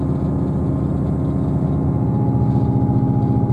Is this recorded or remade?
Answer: recorded